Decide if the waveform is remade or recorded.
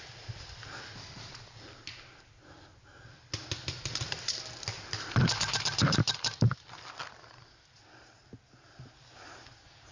recorded